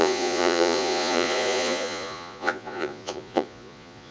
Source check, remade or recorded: remade